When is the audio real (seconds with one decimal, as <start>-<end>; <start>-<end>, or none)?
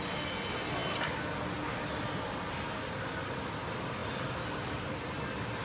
0.0-5.6